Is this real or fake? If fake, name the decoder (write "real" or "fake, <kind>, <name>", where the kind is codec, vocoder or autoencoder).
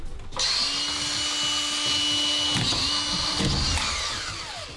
real